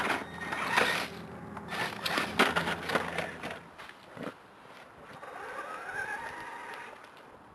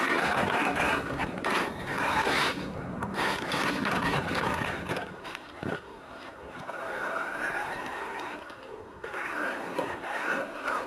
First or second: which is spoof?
second